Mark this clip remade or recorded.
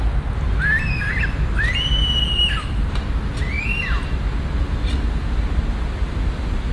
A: recorded